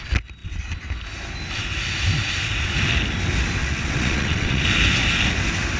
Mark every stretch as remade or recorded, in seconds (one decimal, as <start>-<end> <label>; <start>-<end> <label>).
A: 0.0-3.6 recorded; 3.6-4.6 remade; 4.6-5.8 recorded

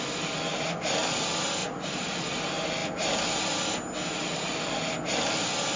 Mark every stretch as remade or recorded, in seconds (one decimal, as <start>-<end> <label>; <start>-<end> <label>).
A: 0.0-1.6 recorded; 1.6-2.2 remade; 2.2-5.8 recorded

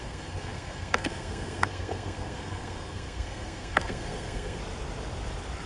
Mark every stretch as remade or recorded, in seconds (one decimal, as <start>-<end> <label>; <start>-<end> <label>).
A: 0.0-4.6 remade; 4.6-5.7 recorded

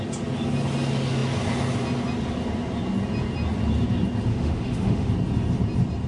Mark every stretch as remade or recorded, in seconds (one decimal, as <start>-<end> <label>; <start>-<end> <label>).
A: 0.0-4.3 recorded; 4.3-5.1 remade; 5.1-6.1 recorded